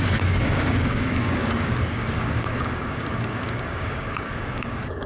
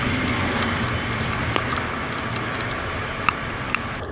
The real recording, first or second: second